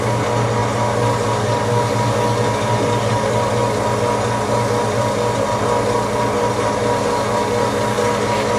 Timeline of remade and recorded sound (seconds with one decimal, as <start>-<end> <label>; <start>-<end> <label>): 0.0-8.6 recorded